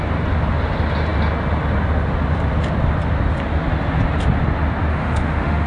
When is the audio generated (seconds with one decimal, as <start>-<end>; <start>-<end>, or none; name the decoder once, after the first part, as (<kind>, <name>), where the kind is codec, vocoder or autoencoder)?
4.9-5.7 (autoencoder, DAC-VAE)